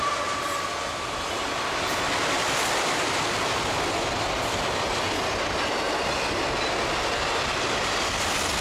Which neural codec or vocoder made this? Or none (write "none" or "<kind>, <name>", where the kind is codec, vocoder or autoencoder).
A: none